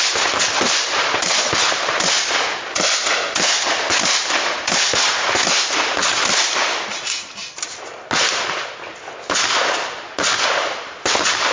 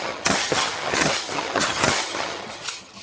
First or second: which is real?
first